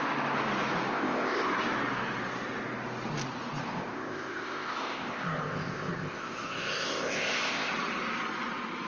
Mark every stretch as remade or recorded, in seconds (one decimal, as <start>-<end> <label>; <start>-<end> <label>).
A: 0.0-0.9 recorded; 0.9-1.5 remade; 1.5-3.6 recorded; 3.6-7.7 remade; 7.7-8.9 recorded